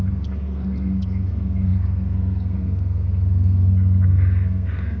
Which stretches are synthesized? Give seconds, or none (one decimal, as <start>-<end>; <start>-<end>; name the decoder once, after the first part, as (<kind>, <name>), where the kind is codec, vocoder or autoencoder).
0.0-5.0 (codec, SNAC)